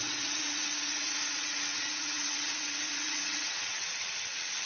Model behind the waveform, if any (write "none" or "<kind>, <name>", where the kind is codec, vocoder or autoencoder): vocoder, WaveNeXt